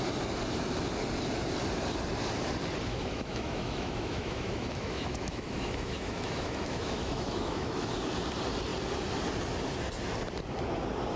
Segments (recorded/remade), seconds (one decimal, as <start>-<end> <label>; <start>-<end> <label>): 0.0-2.9 recorded; 2.9-7.9 remade; 7.9-11.2 recorded